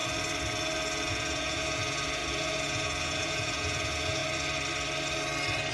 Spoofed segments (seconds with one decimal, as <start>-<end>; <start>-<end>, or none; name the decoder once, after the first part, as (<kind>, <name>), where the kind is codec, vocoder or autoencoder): 1.1-4.2 (vocoder, Vocos)